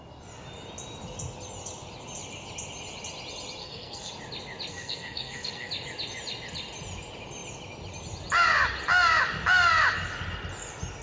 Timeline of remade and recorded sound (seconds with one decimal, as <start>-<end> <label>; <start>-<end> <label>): 0.0-3.6 recorded; 3.6-4.1 remade; 4.1-4.7 recorded; 4.7-5.7 remade; 5.7-11.0 recorded